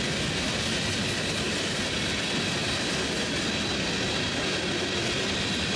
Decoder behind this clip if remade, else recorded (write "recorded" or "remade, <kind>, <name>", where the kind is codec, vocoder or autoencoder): recorded